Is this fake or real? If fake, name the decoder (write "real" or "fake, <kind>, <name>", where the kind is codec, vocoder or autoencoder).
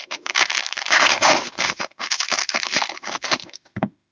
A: fake, autoencoder, DAC-VAE